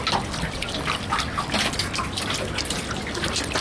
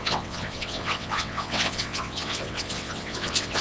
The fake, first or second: second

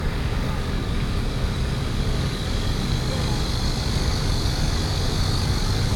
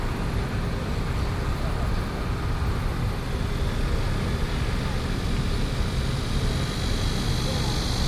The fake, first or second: first